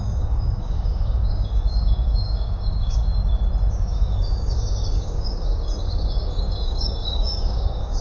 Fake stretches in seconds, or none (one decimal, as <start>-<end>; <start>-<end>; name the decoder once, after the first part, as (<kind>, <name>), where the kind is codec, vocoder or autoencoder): 0.0-3.1 (codec, DAC); 3.7-8.0